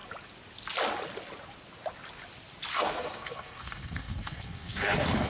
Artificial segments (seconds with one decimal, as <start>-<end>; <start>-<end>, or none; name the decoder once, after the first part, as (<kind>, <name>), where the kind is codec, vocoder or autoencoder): 2.7-5.3 (codec, SNAC)

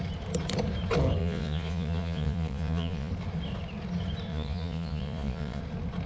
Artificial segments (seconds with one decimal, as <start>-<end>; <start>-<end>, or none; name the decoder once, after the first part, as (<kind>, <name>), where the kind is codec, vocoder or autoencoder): 1.2-3.1 (vocoder, Vocos); 4.3-5.6

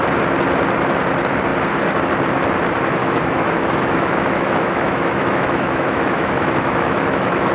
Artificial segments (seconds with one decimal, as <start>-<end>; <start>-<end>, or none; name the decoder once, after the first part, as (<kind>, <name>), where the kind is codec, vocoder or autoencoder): 3.0-7.5 (autoencoder, DAC-VAE)

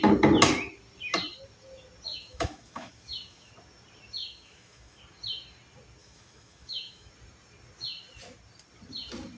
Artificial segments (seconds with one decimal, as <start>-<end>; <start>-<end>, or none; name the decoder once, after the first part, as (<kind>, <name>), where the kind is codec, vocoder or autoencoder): 2.1-3.5 (autoencoder, DAC-VAE); 4.2-5.0; 6.0-7.1

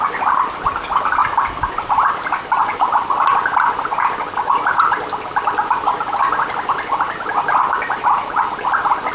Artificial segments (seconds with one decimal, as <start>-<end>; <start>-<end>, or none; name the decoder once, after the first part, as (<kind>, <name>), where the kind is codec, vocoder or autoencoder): none